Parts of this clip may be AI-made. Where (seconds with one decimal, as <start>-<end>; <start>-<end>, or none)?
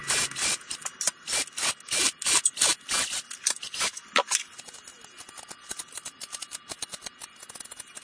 none